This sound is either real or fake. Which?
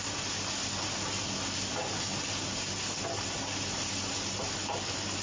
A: real